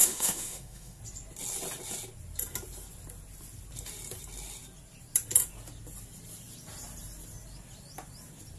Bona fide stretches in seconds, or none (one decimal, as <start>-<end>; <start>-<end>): 1.0-8.6